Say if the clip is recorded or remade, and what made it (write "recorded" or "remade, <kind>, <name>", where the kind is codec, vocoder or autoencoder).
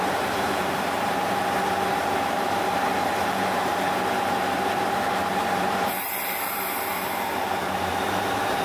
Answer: remade, vocoder, BigVGAN v2